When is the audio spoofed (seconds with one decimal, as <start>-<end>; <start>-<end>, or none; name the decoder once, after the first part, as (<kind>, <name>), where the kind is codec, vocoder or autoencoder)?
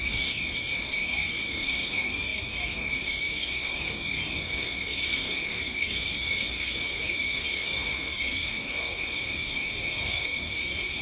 0.0-11.0 (codec, DAC)